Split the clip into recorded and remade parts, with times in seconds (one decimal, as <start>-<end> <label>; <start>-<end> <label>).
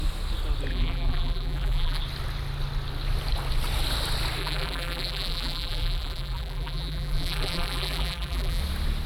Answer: 0.0-0.7 recorded; 0.7-2.0 remade; 2.0-4.4 recorded; 4.4-8.6 remade; 8.6-9.1 recorded